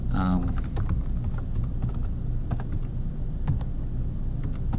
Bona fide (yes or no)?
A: yes